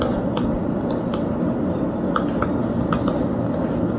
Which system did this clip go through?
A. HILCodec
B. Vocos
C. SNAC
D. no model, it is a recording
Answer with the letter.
D